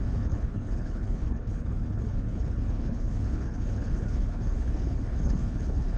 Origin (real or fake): fake